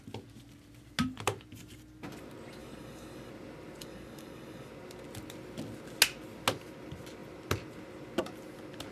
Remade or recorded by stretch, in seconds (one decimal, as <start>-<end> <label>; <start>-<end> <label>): 0.0-2.6 recorded; 2.6-3.3 remade; 3.3-3.8 recorded; 3.8-4.7 remade; 4.7-8.9 recorded